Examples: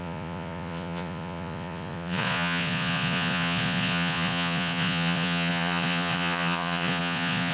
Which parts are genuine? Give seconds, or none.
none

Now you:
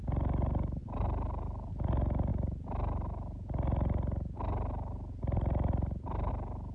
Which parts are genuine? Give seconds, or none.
0.0-6.7